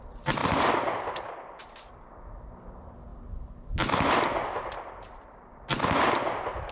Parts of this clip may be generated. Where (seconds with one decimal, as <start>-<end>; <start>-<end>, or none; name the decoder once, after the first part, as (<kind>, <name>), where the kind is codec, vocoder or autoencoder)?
none